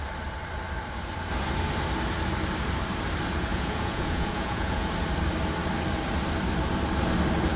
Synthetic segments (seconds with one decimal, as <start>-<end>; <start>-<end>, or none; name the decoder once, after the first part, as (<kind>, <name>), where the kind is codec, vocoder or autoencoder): 3.5-4.9 (vocoder, Vocos)